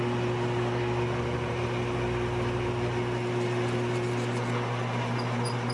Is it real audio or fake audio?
real